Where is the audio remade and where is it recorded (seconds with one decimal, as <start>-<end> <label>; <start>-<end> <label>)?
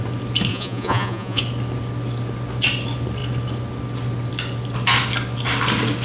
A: 0.0-0.5 recorded; 0.5-1.4 remade; 1.4-6.0 recorded